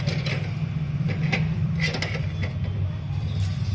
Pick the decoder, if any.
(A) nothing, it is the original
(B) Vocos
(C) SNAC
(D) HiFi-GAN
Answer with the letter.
A